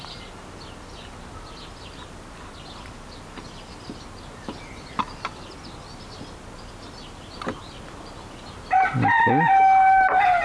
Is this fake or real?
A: real